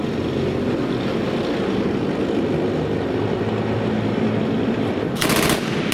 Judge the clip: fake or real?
real